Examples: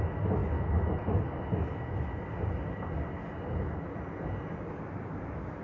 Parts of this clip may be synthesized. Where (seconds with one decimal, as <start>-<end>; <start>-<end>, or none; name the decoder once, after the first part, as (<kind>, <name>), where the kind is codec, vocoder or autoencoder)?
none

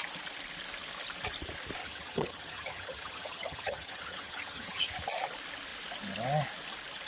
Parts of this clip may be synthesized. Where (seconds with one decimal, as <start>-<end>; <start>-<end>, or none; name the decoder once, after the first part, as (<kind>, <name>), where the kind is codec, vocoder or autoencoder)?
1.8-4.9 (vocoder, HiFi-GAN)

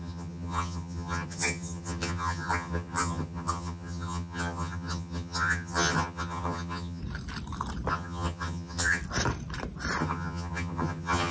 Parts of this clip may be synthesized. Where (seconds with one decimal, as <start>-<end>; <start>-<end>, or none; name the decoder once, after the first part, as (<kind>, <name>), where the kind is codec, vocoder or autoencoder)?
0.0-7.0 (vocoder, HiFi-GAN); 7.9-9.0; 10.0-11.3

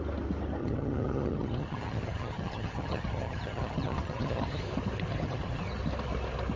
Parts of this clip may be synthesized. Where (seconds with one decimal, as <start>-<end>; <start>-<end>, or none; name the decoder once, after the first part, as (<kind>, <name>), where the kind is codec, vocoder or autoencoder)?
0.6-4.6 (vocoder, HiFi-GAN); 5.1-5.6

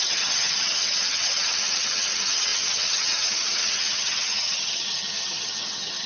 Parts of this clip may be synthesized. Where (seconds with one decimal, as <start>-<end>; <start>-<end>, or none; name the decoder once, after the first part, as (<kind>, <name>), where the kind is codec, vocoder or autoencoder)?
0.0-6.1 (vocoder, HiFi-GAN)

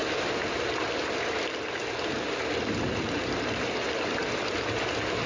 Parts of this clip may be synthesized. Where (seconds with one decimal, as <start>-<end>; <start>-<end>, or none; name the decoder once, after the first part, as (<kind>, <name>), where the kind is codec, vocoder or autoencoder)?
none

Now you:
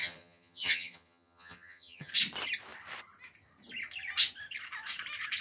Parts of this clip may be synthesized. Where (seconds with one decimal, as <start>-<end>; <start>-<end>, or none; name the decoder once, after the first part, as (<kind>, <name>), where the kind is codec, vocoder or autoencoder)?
0.0-2.1 (vocoder, HiFi-GAN)